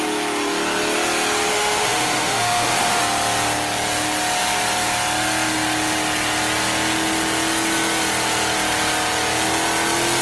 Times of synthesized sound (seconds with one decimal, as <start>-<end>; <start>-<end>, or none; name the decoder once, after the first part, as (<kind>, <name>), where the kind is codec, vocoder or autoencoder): 1.5-3.0 (autoencoder, DAC-VAE)